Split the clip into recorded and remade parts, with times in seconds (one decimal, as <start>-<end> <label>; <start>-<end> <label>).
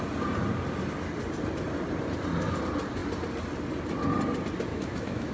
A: 0.0-4.7 recorded; 4.7-5.3 remade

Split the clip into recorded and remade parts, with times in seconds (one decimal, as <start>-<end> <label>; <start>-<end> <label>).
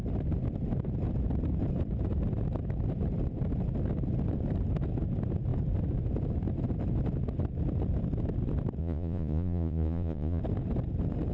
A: 0.0-8.8 recorded; 8.8-10.4 remade; 10.4-11.3 recorded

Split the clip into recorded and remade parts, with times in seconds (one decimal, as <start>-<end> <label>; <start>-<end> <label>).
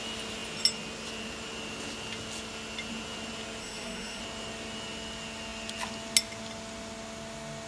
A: 0.0-3.6 recorded; 3.6-4.2 remade; 4.2-7.7 recorded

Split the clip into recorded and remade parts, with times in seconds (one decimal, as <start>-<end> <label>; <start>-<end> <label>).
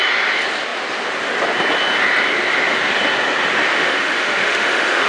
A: 0.0-3.7 recorded; 3.7-5.1 remade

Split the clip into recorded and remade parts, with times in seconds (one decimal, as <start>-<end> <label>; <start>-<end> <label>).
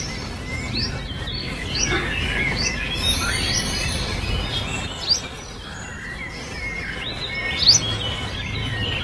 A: 0.0-1.4 recorded; 1.4-3.3 remade; 3.3-9.0 recorded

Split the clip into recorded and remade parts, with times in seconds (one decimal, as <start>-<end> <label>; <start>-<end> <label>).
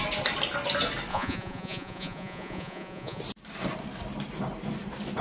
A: 0.0-1.1 recorded; 1.1-3.2 remade; 3.2-5.2 recorded